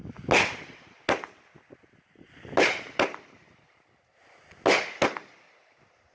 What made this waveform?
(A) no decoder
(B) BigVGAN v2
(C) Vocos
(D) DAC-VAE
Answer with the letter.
A